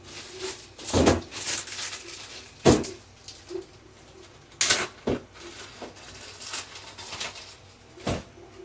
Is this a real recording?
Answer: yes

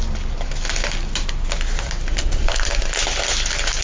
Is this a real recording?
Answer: yes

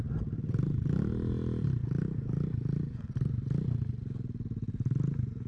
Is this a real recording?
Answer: yes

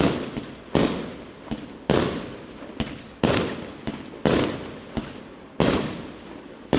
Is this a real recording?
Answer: yes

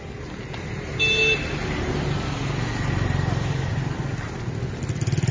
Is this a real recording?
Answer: yes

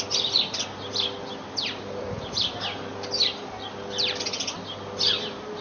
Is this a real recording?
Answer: yes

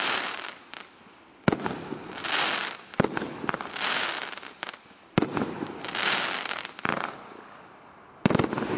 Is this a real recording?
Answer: yes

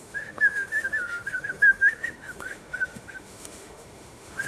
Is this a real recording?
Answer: no